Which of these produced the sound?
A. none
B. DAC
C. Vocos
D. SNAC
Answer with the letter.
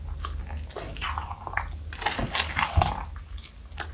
A